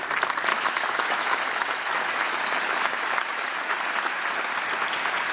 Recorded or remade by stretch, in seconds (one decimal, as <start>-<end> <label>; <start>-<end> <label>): 0.0-0.5 recorded; 0.5-3.7 remade; 3.7-5.3 recorded